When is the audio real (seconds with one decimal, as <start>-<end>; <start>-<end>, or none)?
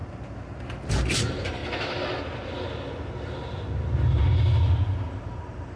0.0-0.9; 1.6-5.1